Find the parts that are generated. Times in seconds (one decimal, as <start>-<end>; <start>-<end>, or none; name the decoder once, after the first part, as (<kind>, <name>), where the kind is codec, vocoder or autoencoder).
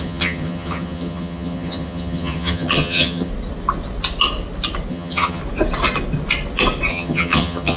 0.0-3.3 (vocoder, HiFi-GAN); 4.9-5.4; 6.9-7.8